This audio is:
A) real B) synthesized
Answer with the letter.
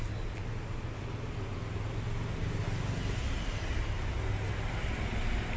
A